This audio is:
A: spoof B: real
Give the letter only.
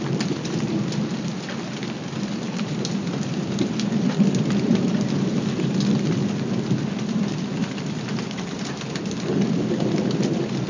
B